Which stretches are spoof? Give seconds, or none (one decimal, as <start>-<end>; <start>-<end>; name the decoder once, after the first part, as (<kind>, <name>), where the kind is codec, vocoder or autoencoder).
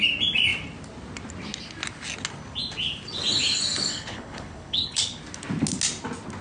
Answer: 3.9-5.2 (codec, HILCodec)